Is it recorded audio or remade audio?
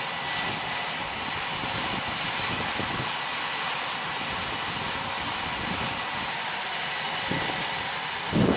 recorded